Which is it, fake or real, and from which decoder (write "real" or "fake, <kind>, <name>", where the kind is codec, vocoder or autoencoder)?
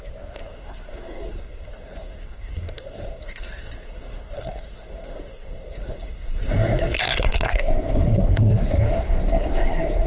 fake, codec, SNAC